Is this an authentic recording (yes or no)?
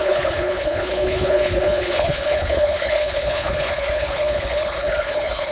no